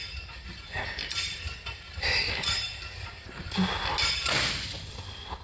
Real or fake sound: real